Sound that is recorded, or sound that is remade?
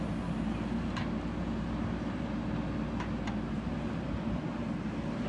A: recorded